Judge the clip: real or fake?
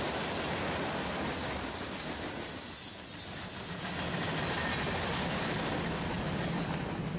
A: real